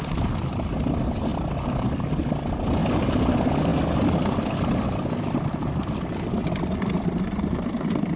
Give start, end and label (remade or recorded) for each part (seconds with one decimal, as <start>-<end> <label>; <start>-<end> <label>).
0.0-8.2 recorded